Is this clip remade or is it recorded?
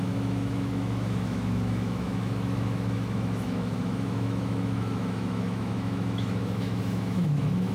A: remade